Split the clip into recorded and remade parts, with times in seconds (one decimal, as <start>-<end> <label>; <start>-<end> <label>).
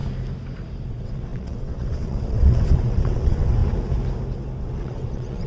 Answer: 0.0-0.9 recorded; 0.9-3.6 remade; 3.6-4.6 recorded; 4.6-5.5 remade